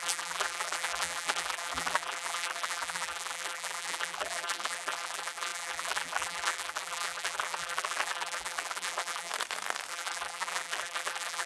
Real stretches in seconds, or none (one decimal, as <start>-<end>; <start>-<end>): 9.3-9.9